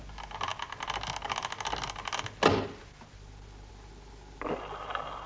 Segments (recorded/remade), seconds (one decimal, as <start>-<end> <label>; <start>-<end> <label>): 0.0-5.3 recorded